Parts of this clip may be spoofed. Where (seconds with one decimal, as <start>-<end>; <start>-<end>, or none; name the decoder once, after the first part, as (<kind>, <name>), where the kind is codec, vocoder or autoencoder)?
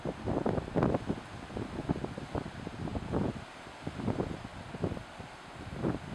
none